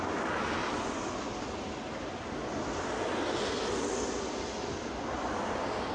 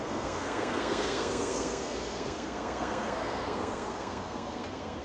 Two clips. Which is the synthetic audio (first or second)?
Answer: second